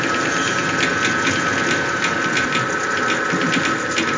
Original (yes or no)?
yes